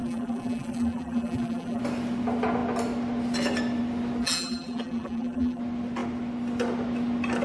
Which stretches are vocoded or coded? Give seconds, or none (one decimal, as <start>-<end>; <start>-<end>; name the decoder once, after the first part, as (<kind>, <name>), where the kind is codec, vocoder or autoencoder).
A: 0.0-1.8 (vocoder, BigVGAN v2); 4.2-5.6